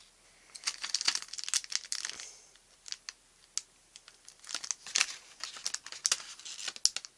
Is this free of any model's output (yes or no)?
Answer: yes